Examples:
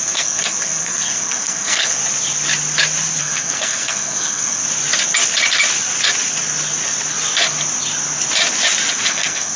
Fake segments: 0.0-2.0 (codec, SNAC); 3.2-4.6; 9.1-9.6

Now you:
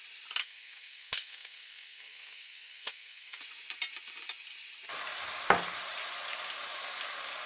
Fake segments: 0.4-3.4 (codec, SNAC)

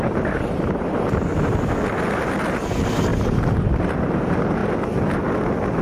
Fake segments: 0.0-1.3 (vocoder, BigVGAN v2); 2.7-4.6

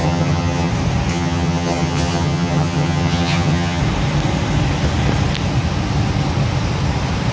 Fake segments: 0.0-0.7 (vocoder, HiFi-GAN); 1.1-3.8

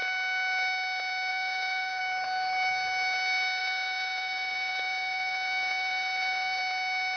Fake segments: 1.3-2.0 (vocoder, Vocos); 3.6-6.6

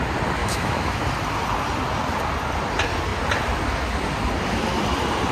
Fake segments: 0.4-1.0 (autoencoder, DAC-VAE)